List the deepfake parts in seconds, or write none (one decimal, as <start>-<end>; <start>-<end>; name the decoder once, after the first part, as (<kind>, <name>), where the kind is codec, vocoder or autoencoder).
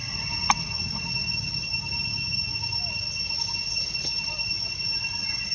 none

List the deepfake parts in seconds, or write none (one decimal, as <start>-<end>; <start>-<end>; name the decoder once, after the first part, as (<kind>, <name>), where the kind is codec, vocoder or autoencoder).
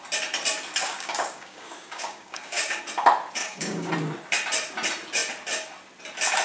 0.8-2.8 (codec, DAC); 3.4-3.9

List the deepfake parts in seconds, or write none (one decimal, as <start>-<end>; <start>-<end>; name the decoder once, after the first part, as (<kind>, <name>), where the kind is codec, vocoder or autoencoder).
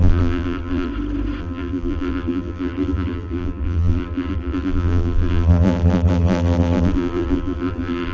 0.0-0.9 (vocoder, BigVGAN v2); 1.4-8.1